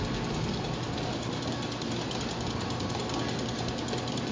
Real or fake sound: real